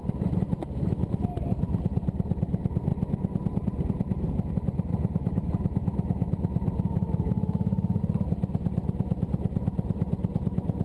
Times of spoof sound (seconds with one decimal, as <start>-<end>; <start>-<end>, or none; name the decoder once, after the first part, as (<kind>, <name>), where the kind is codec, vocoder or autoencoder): 0.6-1.3 (autoencoder, DAC-VAE); 4.9-8.0